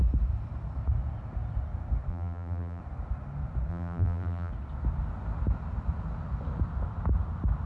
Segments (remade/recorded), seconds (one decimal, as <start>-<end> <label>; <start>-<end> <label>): 0.0-2.1 recorded; 2.1-2.8 remade; 2.8-3.7 recorded; 3.7-4.5 remade; 4.5-7.7 recorded